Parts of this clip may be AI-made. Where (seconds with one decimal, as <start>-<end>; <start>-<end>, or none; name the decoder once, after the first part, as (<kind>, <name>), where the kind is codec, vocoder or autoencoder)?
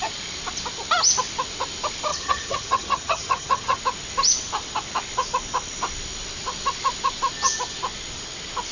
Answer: 2.1-3.8 (vocoder, HiFi-GAN)